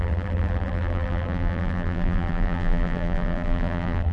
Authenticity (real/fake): fake